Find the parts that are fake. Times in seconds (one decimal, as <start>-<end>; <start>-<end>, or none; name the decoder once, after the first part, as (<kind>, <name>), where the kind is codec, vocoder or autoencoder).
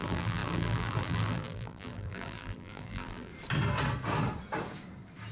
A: 0.0-3.3 (vocoder, BigVGAN v2)